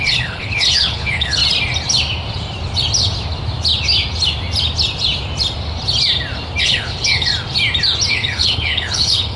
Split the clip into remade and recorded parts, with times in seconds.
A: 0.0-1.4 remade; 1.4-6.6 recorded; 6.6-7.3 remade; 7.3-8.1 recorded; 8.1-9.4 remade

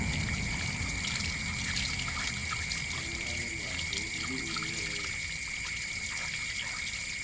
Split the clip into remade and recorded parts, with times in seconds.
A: 0.0-7.2 recorded

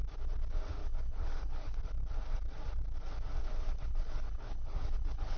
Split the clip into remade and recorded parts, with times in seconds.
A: 0.0-0.8 recorded; 0.8-1.8 remade; 1.8-3.4 recorded; 3.4-5.4 remade

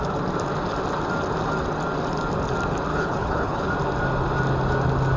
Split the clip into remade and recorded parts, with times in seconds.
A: 0.0-2.9 recorded; 2.9-3.7 remade; 3.7-5.2 recorded